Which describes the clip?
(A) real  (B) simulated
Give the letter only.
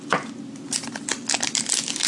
A